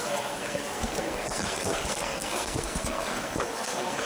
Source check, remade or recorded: remade